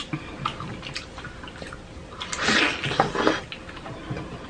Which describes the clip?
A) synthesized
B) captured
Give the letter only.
B